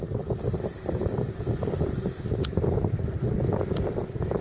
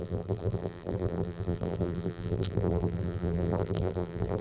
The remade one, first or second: second